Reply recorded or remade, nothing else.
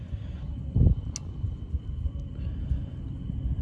recorded